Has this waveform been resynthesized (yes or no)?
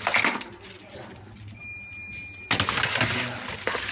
no